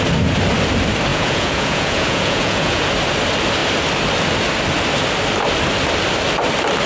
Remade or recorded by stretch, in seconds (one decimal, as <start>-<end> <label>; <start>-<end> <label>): 0.0-1.1 recorded; 1.1-2.9 remade; 2.9-6.9 recorded